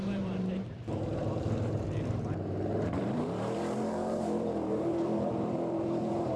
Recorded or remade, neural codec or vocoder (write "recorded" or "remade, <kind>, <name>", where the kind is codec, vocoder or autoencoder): remade, vocoder, BigVGAN v2